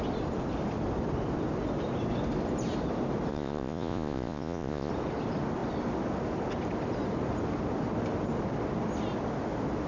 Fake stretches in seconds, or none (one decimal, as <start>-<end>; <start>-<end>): 3.3-4.9